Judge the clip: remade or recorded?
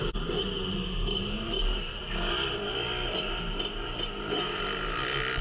recorded